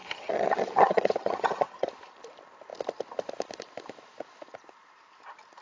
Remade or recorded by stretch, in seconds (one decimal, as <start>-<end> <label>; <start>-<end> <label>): 0.0-1.9 remade; 1.9-5.6 recorded